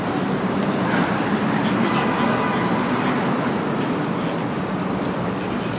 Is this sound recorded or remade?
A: recorded